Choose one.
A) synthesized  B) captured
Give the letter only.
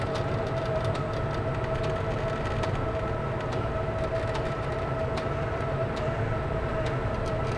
B